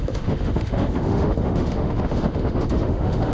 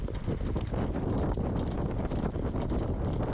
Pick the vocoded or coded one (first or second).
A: first